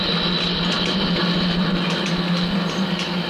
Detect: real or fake real